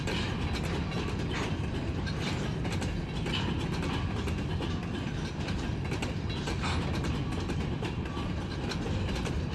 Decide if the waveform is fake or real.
real